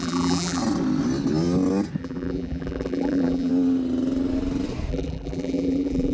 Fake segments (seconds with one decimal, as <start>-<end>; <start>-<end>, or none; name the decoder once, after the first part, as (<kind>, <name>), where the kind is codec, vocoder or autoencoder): 0.0-0.6 (vocoder, BigVGAN v2); 2.0-3.5; 4.9-6.1